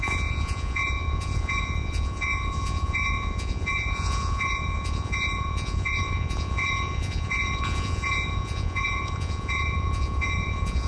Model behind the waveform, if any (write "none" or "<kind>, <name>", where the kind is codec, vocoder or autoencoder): vocoder, Vocos